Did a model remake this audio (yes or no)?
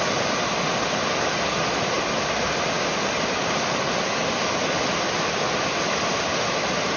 no